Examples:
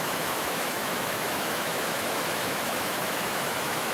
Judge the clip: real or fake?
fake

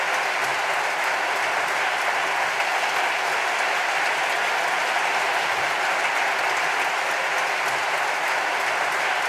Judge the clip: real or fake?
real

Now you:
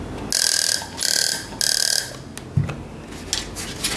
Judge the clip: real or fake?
real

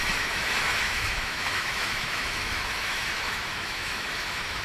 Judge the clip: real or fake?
fake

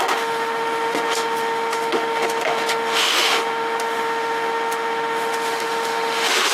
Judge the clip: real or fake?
fake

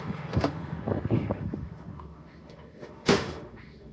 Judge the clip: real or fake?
fake